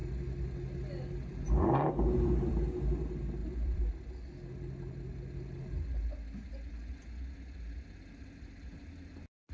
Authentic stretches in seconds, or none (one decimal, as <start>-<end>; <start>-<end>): 0.0-3.4; 3.9-9.5